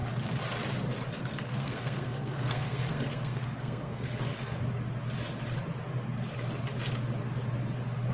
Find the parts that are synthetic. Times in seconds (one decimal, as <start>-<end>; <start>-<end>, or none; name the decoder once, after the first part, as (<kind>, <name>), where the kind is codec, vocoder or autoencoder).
1.2-4.3 (codec, SNAC)